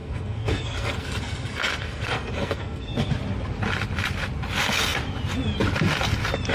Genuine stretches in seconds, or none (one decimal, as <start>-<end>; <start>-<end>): 3.1-6.5